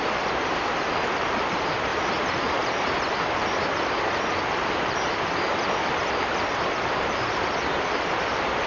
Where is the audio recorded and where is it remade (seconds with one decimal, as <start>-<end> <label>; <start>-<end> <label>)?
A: 0.0-8.7 recorded